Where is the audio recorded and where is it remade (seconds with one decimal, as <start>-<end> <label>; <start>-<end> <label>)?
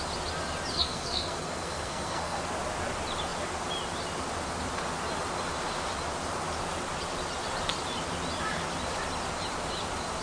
0.0-0.7 recorded; 0.7-2.4 remade; 2.4-10.2 recorded